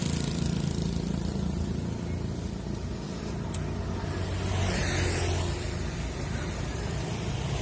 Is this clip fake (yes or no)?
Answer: no